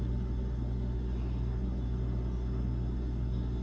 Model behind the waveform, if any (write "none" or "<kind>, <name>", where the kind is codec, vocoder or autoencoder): none